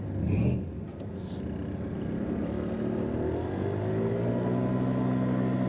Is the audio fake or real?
real